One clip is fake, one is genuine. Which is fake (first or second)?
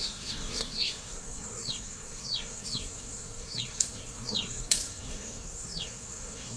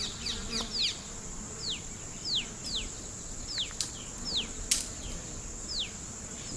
first